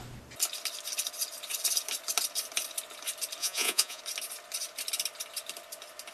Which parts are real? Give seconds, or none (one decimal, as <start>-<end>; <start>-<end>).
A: 0.0-3.4; 4.0-6.1